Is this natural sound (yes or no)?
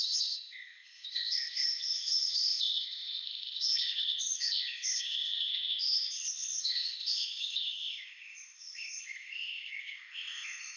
no